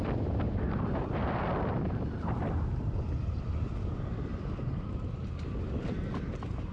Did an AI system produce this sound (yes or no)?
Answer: no